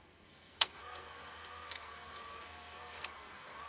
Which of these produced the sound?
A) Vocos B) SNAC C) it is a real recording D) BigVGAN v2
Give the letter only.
B